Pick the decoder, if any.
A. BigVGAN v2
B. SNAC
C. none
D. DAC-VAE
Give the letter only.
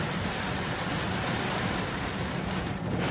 C